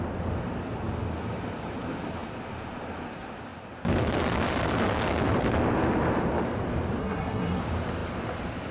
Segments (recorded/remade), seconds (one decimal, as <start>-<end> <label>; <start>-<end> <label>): 0.0-7.0 recorded; 7.0-7.6 remade; 7.6-8.7 recorded